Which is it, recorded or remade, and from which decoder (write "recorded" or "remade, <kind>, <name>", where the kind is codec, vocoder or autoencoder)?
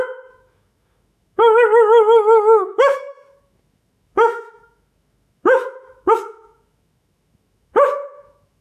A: remade, autoencoder, DAC-VAE